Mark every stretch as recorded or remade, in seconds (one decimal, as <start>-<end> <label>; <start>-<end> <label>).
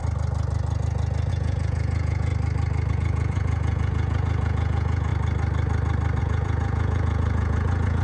0.0-1.3 recorded; 1.3-2.3 remade; 2.3-2.9 recorded; 2.9-5.1 remade; 5.1-6.2 recorded; 6.2-8.0 remade